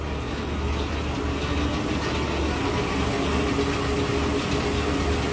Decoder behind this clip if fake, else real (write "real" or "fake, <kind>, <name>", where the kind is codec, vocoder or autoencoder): real